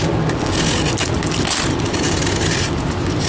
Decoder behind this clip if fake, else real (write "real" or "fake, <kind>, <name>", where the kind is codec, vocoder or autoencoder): real